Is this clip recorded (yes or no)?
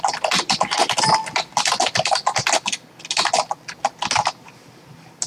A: yes